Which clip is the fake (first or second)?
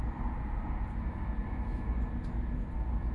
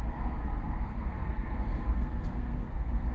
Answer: second